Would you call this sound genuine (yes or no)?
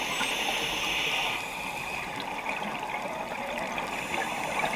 yes